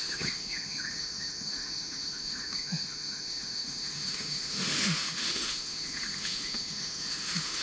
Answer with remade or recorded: remade